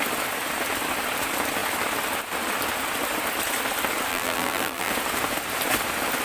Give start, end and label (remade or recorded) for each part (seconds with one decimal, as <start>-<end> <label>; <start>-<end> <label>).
0.0-4.1 recorded; 4.1-4.9 remade; 4.9-6.2 recorded